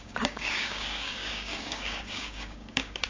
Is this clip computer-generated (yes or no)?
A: yes